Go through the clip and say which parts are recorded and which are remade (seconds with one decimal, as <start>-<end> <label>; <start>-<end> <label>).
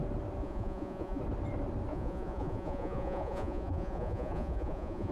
0.0-0.4 recorded; 0.4-1.2 remade; 1.2-1.9 recorded; 1.9-5.1 remade